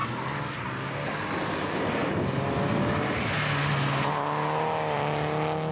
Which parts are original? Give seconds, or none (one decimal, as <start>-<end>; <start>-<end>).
0.0-5.7